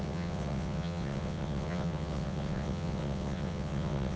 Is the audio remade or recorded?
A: remade